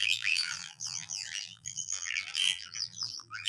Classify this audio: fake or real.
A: fake